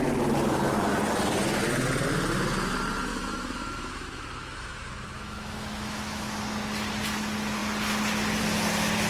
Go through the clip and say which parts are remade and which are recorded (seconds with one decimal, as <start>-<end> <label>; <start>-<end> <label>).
0.0-3.1 recorded; 3.1-6.4 remade; 6.4-9.1 recorded